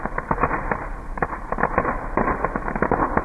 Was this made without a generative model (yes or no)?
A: no